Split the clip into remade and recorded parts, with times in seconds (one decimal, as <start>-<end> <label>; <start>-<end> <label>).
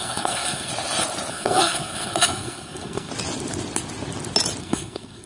0.0-0.7 remade; 0.7-1.3 recorded; 1.3-3.1 remade; 3.1-4.6 recorded; 4.6-5.3 remade